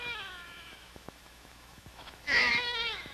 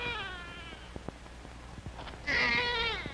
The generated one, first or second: first